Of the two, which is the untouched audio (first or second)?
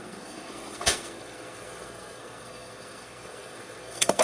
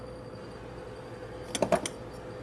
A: second